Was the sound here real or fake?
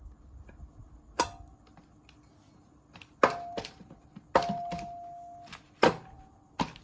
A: real